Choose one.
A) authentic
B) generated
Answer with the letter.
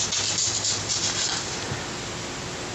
A